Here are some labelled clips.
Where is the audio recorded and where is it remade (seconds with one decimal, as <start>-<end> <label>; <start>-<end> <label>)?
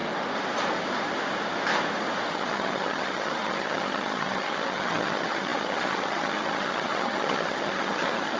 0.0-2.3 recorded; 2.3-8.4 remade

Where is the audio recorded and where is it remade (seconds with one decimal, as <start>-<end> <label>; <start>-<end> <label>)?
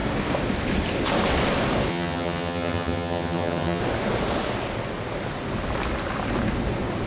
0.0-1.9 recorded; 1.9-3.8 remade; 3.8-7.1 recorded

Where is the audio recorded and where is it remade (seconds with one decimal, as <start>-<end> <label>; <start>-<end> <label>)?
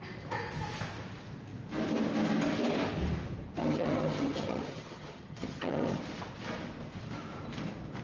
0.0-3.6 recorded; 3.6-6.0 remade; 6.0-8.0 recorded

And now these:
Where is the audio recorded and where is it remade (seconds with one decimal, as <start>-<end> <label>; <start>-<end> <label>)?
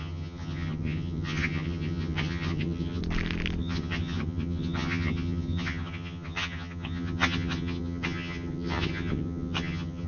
0.0-3.0 remade; 3.0-3.6 recorded; 3.6-10.1 remade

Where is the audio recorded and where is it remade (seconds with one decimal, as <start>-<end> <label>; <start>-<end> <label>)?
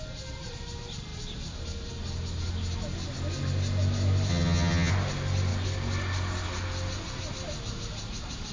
0.0-4.3 recorded; 4.3-4.9 remade; 4.9-8.5 recorded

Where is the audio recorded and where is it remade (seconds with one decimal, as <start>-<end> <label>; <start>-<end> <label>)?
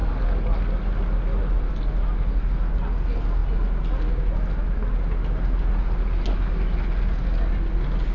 0.0-8.1 recorded